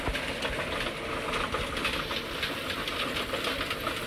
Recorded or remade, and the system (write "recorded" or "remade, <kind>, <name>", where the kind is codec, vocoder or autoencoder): recorded